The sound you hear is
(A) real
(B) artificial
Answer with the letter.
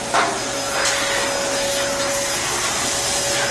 A